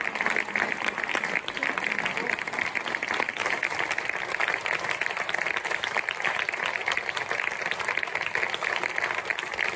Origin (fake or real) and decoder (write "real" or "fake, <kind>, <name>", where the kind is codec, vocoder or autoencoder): real